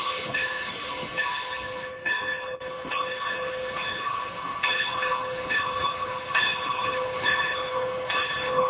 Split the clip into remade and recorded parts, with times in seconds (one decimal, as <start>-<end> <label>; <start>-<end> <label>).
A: 0.0-8.7 remade